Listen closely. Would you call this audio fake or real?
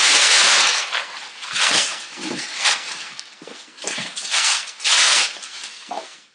fake